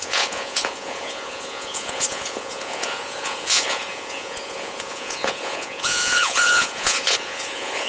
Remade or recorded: remade